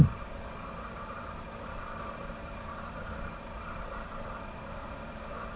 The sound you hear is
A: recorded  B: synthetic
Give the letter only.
B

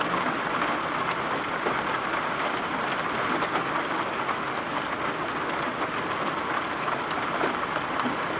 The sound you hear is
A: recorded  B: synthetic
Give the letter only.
A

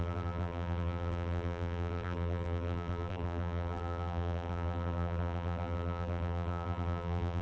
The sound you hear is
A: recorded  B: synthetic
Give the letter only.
B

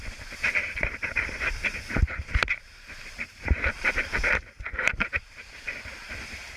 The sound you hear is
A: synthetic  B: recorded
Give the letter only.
A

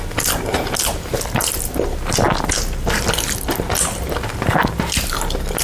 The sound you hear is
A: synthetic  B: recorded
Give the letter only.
B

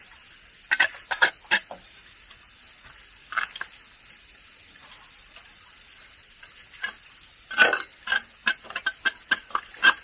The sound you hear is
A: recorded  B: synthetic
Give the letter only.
A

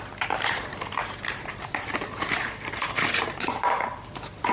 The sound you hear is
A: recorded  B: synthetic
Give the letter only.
B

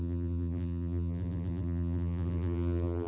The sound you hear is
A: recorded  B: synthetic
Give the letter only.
B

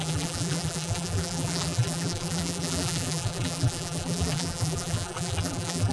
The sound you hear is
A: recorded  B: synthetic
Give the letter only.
B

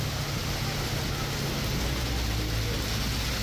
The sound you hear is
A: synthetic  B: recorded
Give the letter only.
B